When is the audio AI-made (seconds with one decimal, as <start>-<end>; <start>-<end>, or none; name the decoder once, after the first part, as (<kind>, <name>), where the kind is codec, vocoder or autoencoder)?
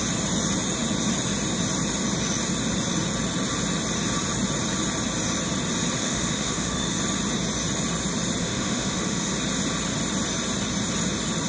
6.0-7.0 (autoencoder, DAC-VAE); 8.4-9.3